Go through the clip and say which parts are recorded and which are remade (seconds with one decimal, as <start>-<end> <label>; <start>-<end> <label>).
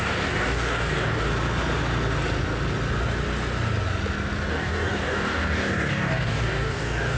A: 0.0-1.3 remade; 1.3-4.5 recorded; 4.5-7.2 remade